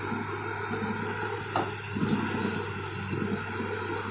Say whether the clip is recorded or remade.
recorded